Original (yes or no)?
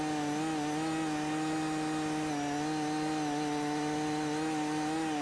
yes